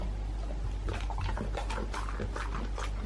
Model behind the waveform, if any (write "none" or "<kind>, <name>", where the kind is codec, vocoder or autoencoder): none